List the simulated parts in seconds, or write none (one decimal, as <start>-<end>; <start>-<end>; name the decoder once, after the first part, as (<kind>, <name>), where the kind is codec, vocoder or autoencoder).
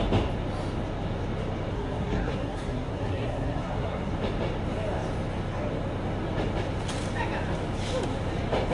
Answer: 1.7-4.1 (codec, SNAC)